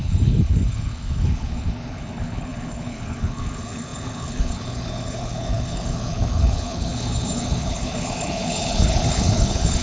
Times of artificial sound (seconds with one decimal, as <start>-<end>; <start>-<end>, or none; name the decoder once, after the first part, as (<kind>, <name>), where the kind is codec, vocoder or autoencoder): 0.0-9.8 (codec, HILCodec)